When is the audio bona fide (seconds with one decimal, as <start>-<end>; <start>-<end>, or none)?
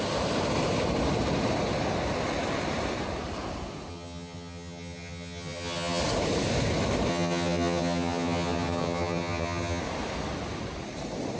0.0-3.9; 6.0-7.1; 9.8-11.4